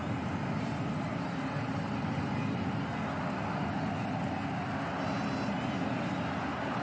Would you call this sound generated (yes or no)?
no